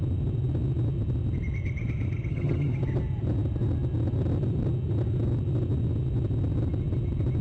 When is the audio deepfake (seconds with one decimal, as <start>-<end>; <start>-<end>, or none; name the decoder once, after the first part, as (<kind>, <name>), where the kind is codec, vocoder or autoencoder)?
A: 2.3-2.8 (vocoder, HiFi-GAN)